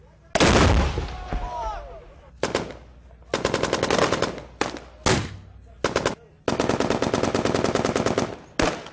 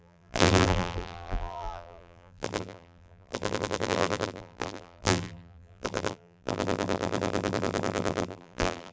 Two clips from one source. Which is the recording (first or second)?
first